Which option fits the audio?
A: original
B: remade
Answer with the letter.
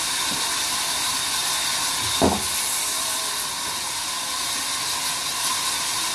A